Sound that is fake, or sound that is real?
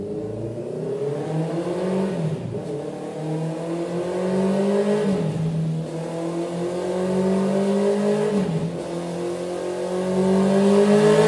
real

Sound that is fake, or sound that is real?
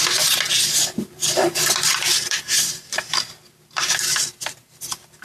fake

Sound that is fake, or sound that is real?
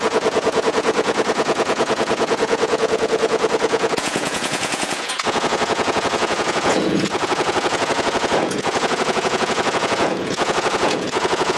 fake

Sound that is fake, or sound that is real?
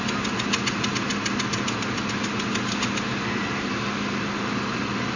real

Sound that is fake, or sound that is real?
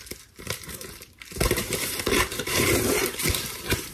fake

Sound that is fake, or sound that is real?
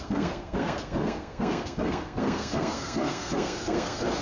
fake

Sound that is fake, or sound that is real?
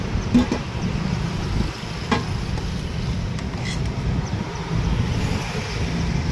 real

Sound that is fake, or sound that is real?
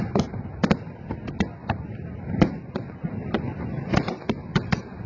fake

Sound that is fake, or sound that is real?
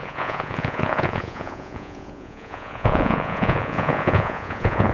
fake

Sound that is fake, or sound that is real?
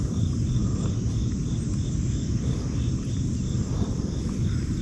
real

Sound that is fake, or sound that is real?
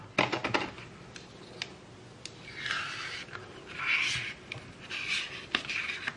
real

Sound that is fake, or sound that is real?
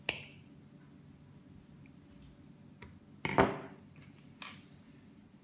real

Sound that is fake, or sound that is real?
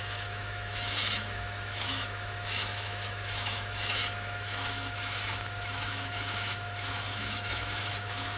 fake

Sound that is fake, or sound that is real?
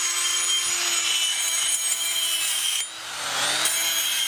real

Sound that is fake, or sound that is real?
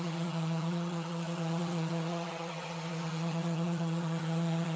fake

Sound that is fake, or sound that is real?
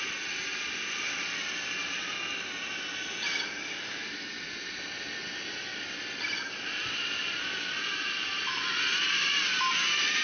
real